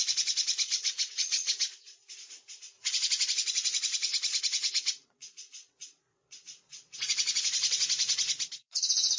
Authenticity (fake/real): fake